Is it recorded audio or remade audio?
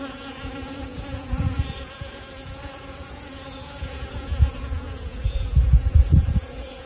remade